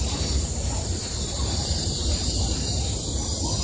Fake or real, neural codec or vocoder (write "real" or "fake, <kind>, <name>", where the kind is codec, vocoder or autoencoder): fake, vocoder, BigVGAN v2